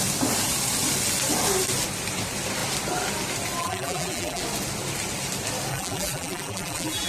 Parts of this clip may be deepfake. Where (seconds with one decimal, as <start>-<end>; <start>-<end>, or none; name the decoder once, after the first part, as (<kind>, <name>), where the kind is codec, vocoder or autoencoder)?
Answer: 3.6-4.4 (vocoder, BigVGAN v2); 5.7-7.1